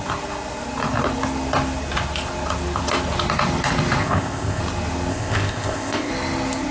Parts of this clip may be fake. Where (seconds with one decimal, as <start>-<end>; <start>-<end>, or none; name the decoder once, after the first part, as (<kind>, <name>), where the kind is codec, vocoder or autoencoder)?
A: 4.0-4.6 (codec, ZipCodec); 5.1-6.1